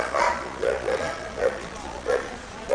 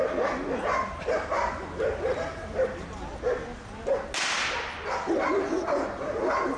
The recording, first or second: second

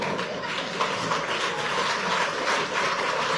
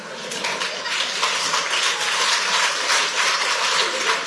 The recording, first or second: first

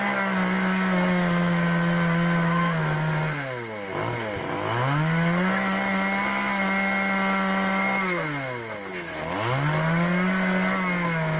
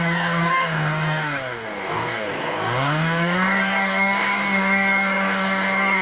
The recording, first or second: first